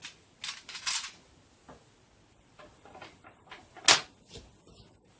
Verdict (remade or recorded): recorded